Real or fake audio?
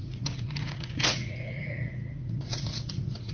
fake